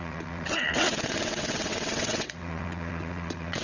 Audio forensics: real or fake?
fake